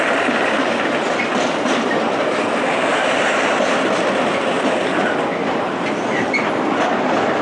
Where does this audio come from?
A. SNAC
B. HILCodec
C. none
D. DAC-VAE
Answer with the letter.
C